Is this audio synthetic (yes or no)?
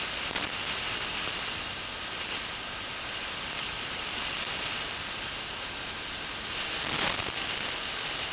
no